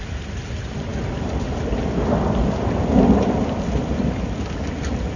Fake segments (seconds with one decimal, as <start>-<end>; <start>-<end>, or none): none